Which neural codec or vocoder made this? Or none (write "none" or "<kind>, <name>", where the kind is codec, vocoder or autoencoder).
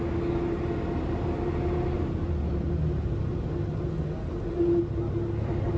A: none